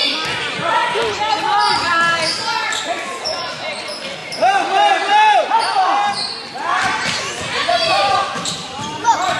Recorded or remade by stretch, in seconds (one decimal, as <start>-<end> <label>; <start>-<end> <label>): 0.0-1.9 remade; 1.9-6.7 recorded; 6.7-9.4 remade